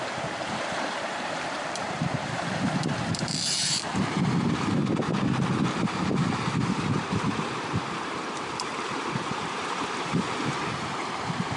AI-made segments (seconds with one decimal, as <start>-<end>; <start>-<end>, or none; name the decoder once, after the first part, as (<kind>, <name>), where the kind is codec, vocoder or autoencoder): 0.0-4.8 (vocoder, BigVGAN v2); 5.8-11.6